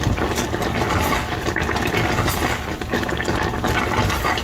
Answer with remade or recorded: recorded